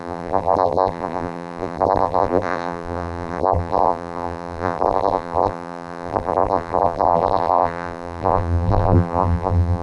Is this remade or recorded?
remade